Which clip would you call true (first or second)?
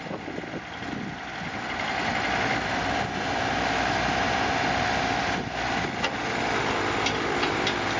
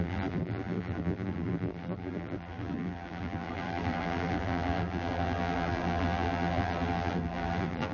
first